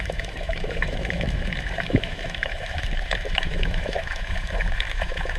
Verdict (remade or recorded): remade